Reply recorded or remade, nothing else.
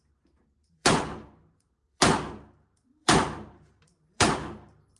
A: remade